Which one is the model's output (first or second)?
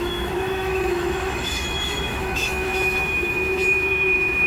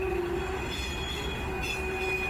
first